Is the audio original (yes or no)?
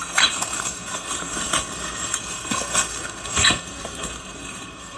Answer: no